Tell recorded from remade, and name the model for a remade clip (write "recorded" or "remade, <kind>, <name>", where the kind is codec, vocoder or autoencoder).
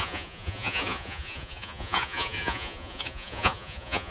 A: remade, vocoder, Vocos